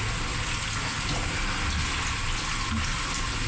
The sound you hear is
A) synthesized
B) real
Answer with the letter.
B